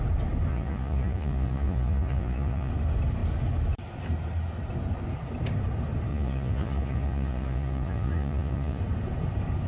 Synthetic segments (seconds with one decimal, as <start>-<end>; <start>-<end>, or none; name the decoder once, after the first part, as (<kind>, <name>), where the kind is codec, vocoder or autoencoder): 0.5-2.7 (vocoder, Vocos); 6.1-8.8